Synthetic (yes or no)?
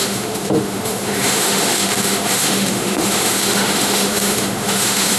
yes